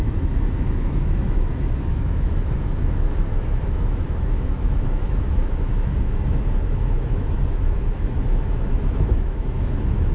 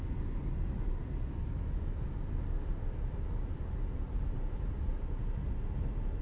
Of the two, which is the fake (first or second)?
first